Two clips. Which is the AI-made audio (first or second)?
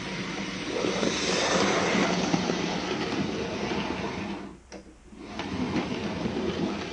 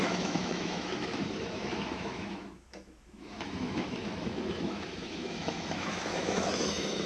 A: second